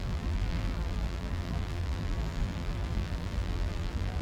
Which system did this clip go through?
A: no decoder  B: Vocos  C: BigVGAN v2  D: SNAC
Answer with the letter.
C